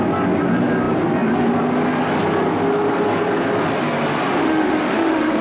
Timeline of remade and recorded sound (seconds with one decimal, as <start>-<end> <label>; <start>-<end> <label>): 0.0-4.4 recorded; 4.4-5.4 remade